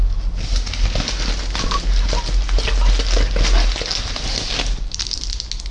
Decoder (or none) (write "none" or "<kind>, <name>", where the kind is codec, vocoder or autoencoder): none